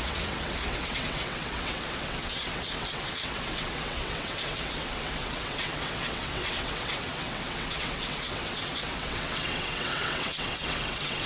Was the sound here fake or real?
fake